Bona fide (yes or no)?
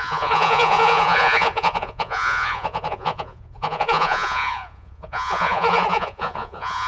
no